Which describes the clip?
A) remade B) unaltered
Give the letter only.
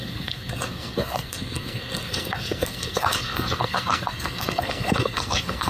A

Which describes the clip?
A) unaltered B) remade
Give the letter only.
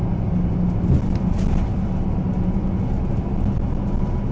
A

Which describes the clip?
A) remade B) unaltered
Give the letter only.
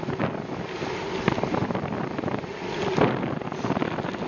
B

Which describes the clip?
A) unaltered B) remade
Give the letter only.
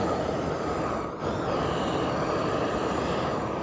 A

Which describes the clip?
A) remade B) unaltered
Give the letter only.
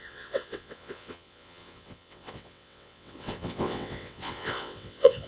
A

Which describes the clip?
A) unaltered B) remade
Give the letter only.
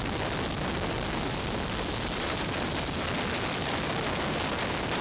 A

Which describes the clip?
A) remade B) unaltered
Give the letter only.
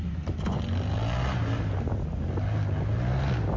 B